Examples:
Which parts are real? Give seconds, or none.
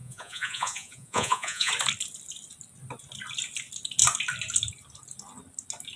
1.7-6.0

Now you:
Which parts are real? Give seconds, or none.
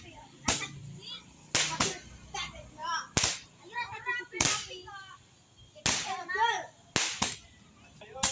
0.0-8.3